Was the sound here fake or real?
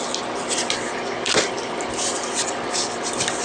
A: real